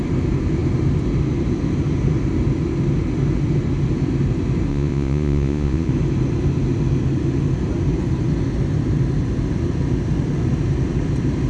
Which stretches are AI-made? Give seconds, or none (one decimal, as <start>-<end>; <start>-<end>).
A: 4.7-5.9